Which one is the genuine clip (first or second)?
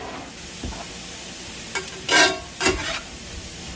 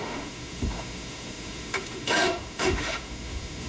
first